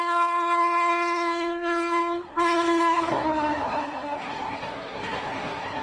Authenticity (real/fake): fake